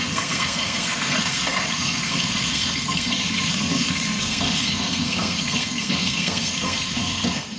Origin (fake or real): fake